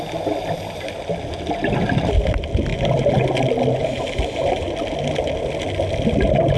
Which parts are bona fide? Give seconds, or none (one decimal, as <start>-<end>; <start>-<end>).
0.0-6.6